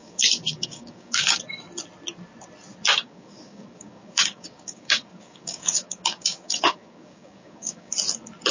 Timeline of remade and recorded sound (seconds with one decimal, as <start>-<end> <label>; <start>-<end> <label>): 0.0-1.4 remade; 1.4-2.9 recorded; 2.9-7.9 remade; 7.9-8.5 recorded